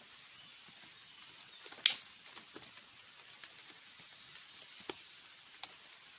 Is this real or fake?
real